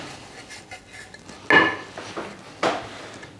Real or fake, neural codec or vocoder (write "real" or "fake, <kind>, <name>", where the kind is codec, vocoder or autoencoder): real